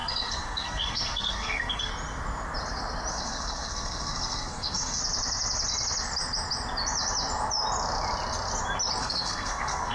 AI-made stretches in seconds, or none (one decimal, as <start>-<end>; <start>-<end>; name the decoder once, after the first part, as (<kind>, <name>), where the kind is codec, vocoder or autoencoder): 0.0-1.9 (codec, SNAC); 3.1-5.0; 9.0-9.9